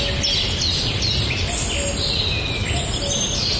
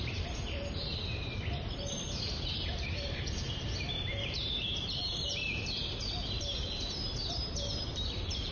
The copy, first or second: second